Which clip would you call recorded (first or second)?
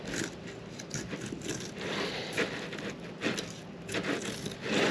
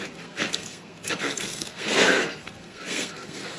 first